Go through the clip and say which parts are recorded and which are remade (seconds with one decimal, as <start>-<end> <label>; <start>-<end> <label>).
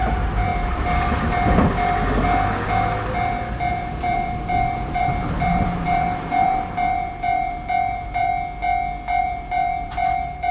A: 0.0-0.5 remade; 0.5-3.7 recorded; 3.7-8.3 remade; 8.3-9.2 recorded; 9.2-10.5 remade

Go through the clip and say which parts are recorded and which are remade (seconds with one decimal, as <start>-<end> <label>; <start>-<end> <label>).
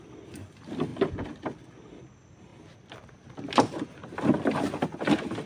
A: 0.0-5.5 recorded